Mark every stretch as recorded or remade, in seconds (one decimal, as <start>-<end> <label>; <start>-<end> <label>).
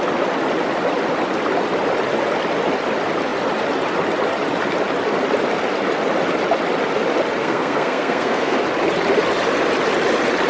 0.0-7.4 recorded; 7.4-8.6 remade; 8.6-10.5 recorded